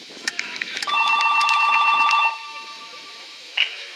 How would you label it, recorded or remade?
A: remade